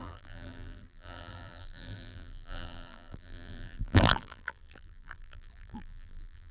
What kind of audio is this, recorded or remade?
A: remade